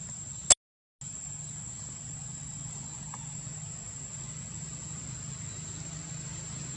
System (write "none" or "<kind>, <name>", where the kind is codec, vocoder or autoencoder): none